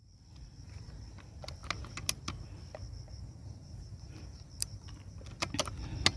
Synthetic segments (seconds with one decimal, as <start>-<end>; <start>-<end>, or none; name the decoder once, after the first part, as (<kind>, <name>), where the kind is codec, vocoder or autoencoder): 3.4-4.5 (vocoder, BigVGAN v2)